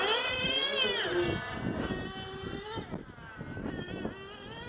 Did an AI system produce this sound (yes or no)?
no